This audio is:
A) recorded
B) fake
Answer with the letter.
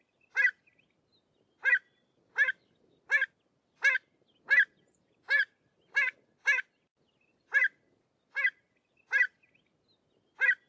A